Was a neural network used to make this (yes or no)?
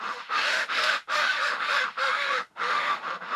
yes